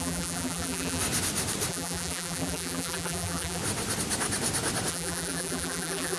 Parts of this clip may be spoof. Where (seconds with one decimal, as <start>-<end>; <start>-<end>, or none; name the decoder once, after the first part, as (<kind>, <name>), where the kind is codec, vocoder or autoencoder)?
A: 0.0-1.0 (vocoder, BigVGAN v2); 1.7-3.6; 4.9-6.2